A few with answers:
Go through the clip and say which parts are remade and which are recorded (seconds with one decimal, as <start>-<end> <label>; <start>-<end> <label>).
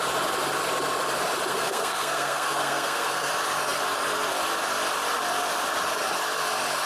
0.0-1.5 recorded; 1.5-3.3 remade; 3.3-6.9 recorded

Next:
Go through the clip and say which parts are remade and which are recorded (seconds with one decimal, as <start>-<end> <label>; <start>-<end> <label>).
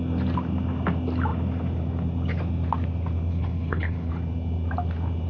0.0-3.3 recorded; 3.3-4.1 remade; 4.1-5.3 recorded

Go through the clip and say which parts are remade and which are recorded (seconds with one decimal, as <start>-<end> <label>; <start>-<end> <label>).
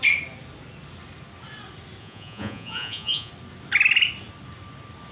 0.0-2.0 recorded; 2.0-3.3 remade; 3.3-5.1 recorded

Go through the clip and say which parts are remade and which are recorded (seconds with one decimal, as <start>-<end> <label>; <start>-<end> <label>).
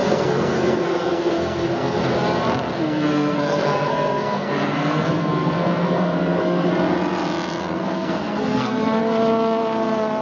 0.0-2.1 remade; 2.1-2.7 recorded; 2.7-6.7 remade; 6.7-7.6 recorded; 7.6-9.0 remade; 9.0-10.2 recorded